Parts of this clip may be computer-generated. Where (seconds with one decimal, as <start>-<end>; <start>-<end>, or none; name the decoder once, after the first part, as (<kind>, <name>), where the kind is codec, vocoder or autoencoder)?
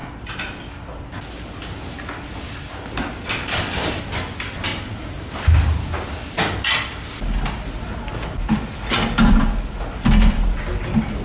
4.7-5.3 (vocoder, BigVGAN v2)